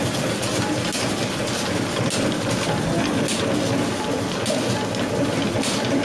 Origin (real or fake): real